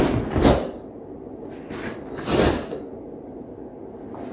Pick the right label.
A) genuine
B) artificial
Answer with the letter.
A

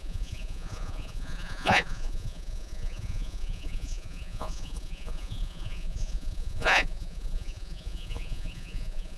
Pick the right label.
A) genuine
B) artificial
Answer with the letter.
B